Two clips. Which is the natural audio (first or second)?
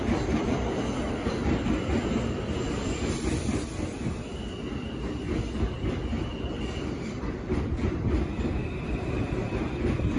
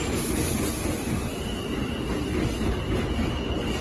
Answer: second